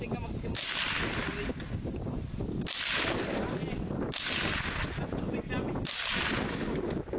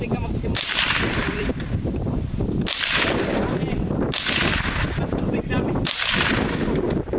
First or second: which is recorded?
first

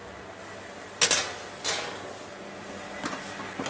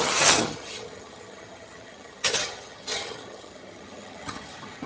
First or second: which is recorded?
first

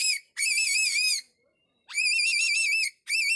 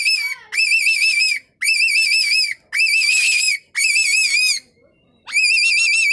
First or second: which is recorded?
second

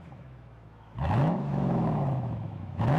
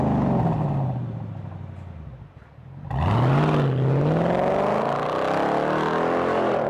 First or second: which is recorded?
second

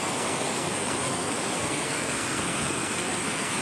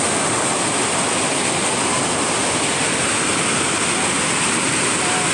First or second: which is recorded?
second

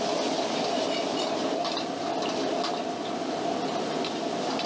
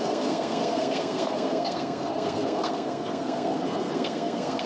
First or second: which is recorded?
first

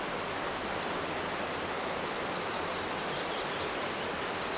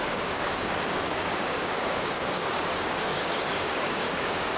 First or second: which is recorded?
first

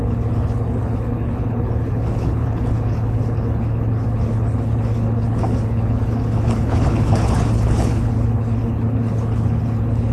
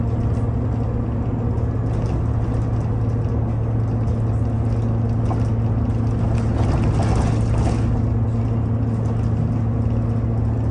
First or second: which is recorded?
second